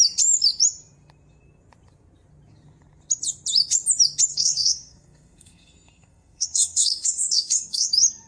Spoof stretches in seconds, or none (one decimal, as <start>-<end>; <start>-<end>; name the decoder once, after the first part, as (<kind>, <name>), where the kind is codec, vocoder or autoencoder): 4.3-7.9 (codec, SNAC)